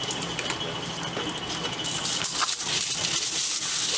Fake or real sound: real